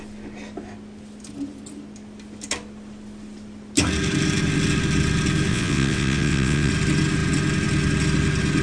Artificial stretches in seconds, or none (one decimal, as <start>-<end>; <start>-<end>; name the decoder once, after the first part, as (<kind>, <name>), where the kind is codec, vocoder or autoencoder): 5.5-6.7 (vocoder, WaveNeXt)

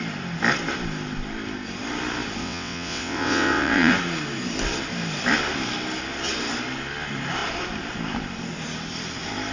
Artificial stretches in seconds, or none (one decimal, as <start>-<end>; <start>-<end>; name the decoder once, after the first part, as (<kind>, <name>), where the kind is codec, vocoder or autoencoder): 2.4-3.9 (vocoder, WaveNeXt)

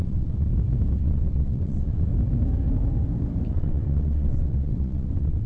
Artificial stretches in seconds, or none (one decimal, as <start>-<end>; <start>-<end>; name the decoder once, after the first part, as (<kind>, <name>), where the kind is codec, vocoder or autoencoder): 0.0-0.5 (vocoder, WaveNeXt); 1.0-2.1; 3.5-5.5

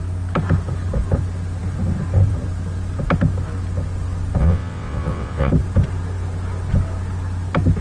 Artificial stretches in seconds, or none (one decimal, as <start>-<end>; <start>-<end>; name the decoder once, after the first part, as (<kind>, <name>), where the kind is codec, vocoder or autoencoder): 4.4-5.5 (vocoder, WaveNeXt)

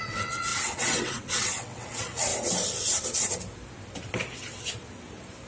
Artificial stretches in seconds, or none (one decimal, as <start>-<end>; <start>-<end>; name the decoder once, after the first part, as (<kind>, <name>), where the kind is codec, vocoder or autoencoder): 0.0-2.3 (vocoder, WaveNeXt)